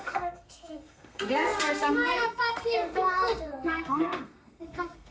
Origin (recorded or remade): remade